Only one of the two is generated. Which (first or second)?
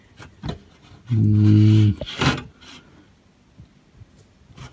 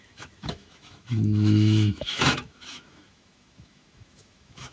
second